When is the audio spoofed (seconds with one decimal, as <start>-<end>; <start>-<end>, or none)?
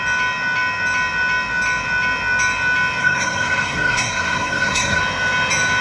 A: 3.0-5.0